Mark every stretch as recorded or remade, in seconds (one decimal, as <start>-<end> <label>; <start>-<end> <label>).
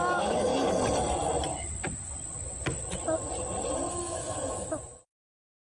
0.0-0.5 remade; 0.5-3.9 recorded; 3.9-5.7 remade